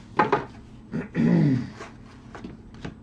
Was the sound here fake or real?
real